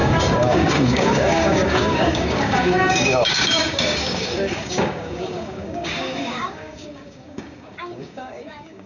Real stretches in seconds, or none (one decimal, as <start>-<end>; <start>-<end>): none